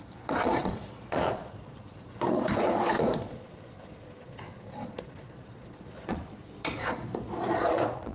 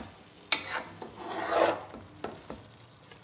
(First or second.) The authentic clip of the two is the second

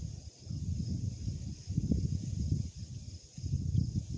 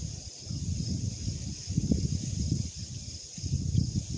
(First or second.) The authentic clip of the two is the first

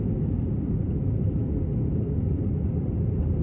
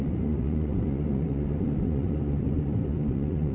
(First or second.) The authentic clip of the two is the first